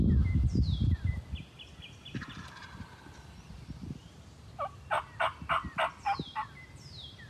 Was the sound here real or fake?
real